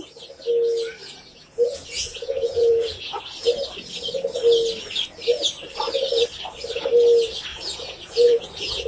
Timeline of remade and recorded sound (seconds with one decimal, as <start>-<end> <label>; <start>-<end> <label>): 0.0-1.0 recorded; 1.0-3.2 remade; 3.2-7.5 recorded; 7.5-8.9 remade